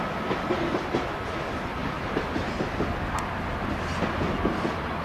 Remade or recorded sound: recorded